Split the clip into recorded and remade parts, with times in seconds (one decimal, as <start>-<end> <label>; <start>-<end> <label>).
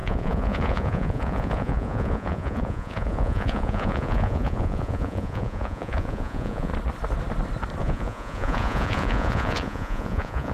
0.0-6.7 remade; 6.7-7.8 recorded; 7.8-10.5 remade